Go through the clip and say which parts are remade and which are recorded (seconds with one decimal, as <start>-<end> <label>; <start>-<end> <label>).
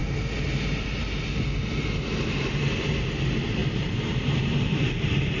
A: 0.0-3.6 recorded; 3.6-5.0 remade; 5.0-5.4 recorded